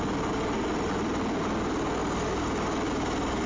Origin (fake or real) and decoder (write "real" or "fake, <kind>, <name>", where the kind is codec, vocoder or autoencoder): real